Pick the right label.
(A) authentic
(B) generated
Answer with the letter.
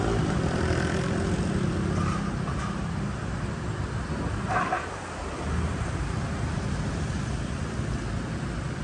A